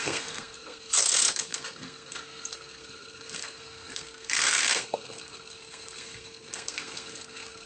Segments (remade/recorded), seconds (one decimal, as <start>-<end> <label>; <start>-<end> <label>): 0.0-7.7 remade